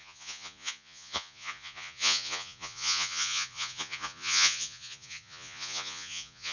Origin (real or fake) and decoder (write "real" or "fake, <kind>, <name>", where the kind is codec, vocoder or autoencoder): fake, vocoder, Vocos